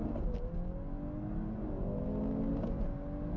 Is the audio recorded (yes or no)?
yes